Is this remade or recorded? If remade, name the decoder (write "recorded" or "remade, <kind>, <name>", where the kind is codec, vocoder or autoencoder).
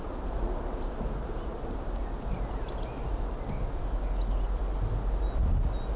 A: recorded